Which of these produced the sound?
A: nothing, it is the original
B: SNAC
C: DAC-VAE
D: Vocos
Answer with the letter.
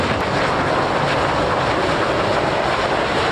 A